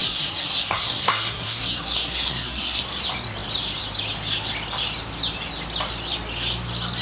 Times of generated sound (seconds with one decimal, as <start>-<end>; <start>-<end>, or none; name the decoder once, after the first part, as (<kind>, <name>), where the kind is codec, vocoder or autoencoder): 0.0-2.8 (codec, SNAC)